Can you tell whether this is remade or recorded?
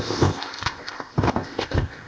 remade